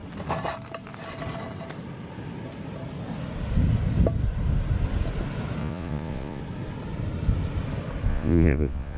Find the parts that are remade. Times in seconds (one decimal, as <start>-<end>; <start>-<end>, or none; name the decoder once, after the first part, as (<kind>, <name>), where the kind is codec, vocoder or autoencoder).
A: 5.6-6.4 (vocoder, Vocos); 8.1-9.0